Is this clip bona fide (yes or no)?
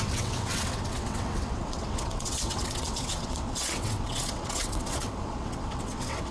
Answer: no